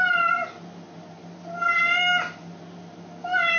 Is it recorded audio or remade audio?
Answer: recorded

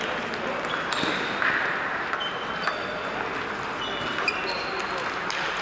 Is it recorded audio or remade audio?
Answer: recorded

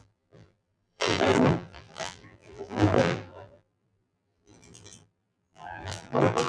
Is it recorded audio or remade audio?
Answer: remade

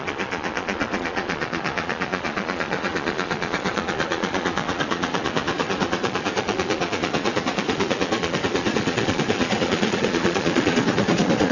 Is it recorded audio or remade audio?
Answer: remade